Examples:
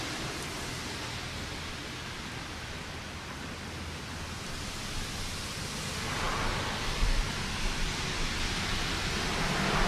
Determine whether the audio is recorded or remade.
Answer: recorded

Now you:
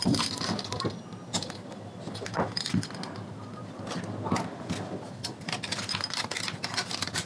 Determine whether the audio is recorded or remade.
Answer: recorded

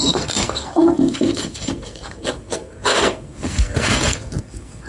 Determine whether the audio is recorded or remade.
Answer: remade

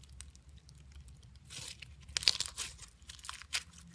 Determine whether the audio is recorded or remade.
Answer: recorded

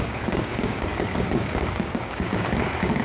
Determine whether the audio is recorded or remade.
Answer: remade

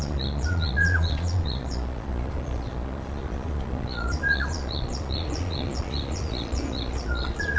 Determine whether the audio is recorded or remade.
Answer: remade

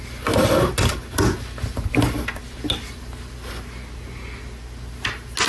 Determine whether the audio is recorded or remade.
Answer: recorded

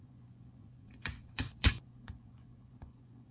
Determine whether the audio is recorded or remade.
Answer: remade